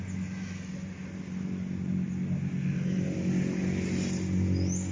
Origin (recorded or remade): recorded